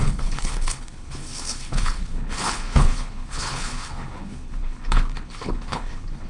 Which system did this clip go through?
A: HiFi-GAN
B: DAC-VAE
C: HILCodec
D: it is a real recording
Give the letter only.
C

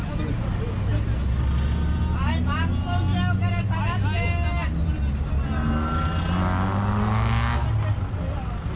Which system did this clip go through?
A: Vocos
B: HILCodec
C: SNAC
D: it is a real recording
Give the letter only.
D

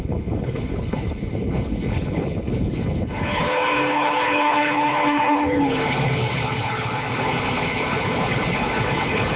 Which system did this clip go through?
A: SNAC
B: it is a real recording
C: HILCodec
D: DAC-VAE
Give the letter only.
C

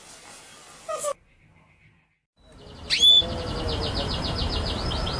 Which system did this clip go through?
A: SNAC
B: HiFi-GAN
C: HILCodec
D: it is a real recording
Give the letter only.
D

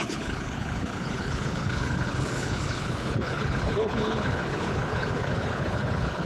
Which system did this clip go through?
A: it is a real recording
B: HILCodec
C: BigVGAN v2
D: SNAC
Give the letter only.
B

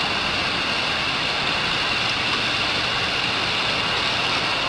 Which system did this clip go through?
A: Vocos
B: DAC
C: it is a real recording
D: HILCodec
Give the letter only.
C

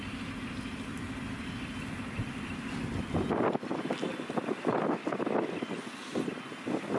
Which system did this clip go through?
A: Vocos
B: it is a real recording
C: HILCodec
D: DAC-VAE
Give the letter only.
B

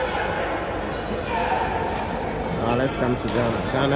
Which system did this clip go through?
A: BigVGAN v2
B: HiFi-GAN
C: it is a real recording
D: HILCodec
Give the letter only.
C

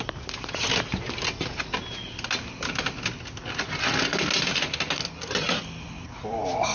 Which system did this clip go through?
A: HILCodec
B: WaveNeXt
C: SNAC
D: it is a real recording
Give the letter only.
D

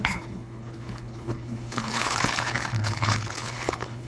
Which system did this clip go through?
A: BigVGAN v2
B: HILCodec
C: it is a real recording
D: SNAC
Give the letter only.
B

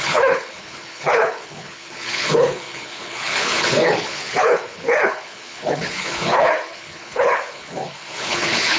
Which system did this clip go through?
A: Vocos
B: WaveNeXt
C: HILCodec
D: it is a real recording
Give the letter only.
C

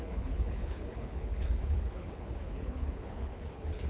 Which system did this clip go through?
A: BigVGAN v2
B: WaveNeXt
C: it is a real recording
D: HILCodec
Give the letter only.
D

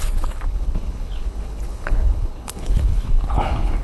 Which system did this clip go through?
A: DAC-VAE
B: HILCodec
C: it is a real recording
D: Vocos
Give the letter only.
B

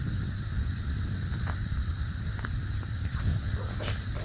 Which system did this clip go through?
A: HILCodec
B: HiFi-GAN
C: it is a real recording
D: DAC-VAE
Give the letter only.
C